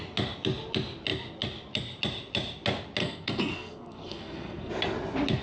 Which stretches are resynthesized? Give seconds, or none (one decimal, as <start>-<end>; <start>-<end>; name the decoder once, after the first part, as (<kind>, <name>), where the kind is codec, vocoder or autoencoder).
3.0-4.7 (codec, SNAC)